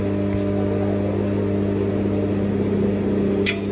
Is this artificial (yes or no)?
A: no